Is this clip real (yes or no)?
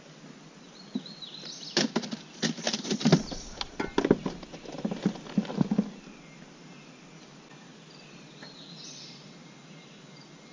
yes